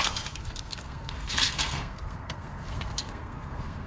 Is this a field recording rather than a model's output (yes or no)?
no